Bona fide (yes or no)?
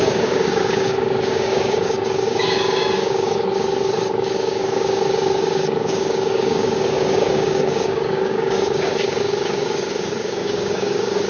no